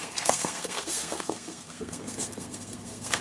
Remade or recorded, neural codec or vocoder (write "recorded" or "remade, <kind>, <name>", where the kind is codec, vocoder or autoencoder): remade, codec, SNAC